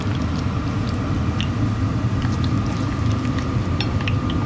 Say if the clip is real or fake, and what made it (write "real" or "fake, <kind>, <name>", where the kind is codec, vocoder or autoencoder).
real